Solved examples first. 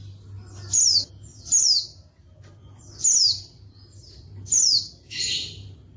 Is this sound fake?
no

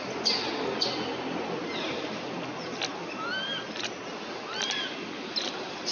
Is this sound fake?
no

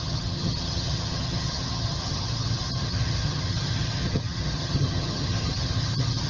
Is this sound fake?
yes